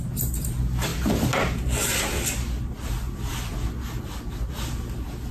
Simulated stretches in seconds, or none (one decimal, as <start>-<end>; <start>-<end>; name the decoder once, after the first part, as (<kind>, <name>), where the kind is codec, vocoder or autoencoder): none